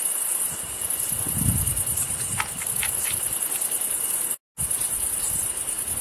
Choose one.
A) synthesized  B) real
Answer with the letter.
B